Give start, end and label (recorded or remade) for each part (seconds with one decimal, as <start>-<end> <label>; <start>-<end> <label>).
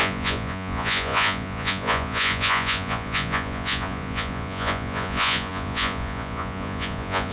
0.0-7.3 remade